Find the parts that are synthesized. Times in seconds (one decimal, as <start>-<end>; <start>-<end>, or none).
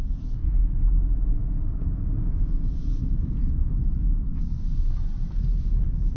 0.0-0.6; 1.4-4.4